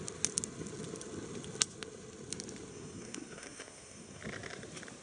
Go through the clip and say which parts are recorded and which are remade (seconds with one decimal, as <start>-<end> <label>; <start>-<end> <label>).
0.0-2.7 recorded; 2.7-4.2 remade; 4.2-5.0 recorded